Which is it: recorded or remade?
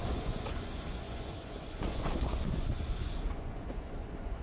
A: remade